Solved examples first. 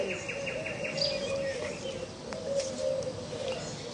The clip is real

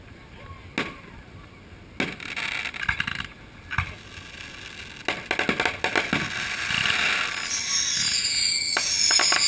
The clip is real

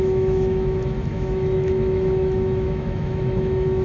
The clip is fake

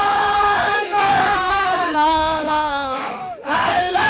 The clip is fake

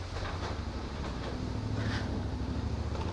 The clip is real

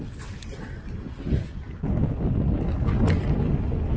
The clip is real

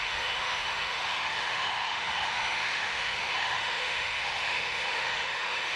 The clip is fake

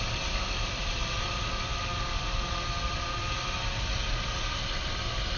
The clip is real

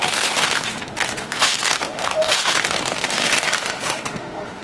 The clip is fake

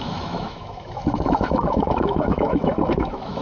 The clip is fake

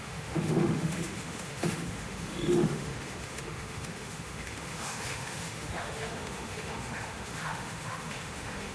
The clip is fake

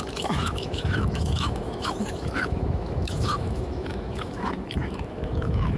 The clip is fake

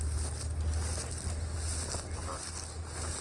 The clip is real